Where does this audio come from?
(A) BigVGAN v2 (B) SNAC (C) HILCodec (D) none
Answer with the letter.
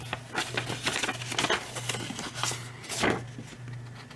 D